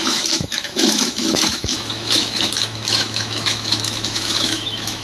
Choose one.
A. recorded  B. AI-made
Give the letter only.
B